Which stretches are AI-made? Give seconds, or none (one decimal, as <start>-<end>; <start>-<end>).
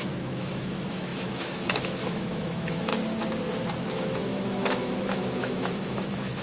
0.0-2.9; 3.8-6.4